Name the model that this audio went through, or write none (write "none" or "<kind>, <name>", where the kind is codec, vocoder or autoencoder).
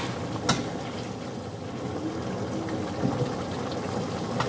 none